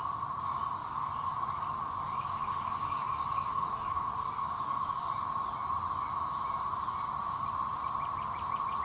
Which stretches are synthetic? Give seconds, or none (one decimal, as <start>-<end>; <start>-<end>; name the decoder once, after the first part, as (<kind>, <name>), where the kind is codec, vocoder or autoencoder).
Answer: 0.8-5.1 (codec, DAC)